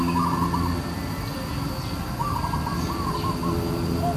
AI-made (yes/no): no